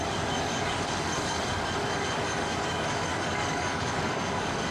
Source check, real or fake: fake